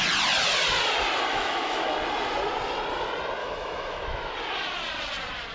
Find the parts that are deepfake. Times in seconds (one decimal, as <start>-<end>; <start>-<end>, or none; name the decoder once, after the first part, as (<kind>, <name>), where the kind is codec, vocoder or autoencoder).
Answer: 1.3-1.9 (autoencoder, DAC-VAE); 3.4-4.3